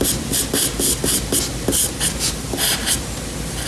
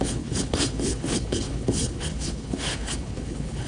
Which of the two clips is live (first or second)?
first